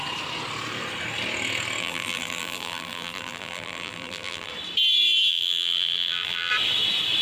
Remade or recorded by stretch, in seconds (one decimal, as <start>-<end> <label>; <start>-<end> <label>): 0.0-1.8 recorded; 1.8-4.5 remade; 4.5-5.3 recorded; 5.3-6.5 remade; 6.5-7.2 recorded